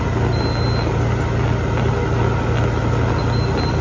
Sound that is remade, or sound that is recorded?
recorded